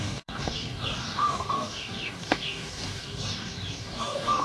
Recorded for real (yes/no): no